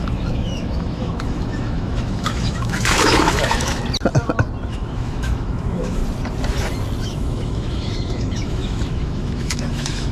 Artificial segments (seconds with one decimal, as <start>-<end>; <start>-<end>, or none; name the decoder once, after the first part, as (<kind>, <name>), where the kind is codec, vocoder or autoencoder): 0.0-3.8 (autoencoder, DAC-VAE); 4.7-6.0; 7.0-10.1